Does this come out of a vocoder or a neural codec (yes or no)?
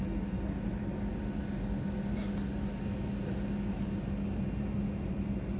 no